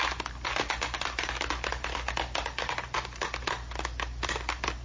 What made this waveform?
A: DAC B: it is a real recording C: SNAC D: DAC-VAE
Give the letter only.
B